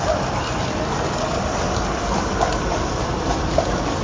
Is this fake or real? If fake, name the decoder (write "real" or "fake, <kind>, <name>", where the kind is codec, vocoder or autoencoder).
fake, vocoder, BigVGAN v2